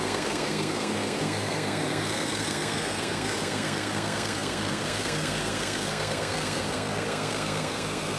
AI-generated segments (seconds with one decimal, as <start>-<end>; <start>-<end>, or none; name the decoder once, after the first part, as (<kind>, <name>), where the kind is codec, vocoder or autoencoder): 0.0-8.2 (codec, SNAC)